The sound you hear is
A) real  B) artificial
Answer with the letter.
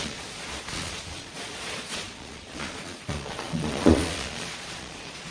B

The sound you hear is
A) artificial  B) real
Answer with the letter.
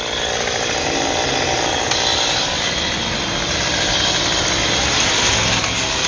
B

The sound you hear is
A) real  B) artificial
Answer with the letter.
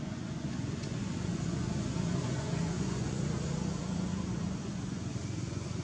B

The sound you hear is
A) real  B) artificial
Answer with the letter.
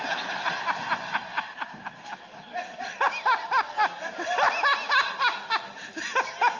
A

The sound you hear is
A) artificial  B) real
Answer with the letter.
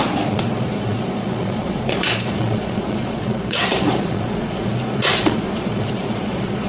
A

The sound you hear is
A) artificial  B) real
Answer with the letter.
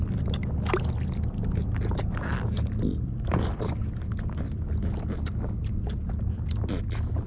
B